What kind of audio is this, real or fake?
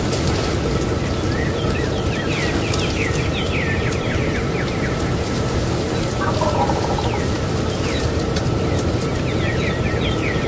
real